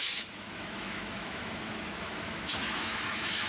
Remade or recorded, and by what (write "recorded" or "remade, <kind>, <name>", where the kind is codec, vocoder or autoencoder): remade, autoencoder, DAC-VAE